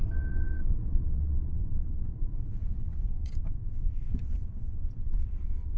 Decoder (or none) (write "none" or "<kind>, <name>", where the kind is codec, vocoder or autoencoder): vocoder, WaveNeXt